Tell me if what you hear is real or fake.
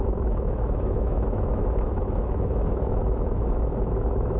fake